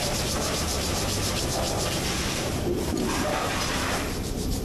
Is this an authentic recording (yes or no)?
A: no